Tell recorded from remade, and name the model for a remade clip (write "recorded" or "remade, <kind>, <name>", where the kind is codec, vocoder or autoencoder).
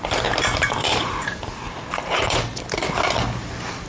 recorded